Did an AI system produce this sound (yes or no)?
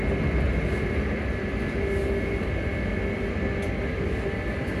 no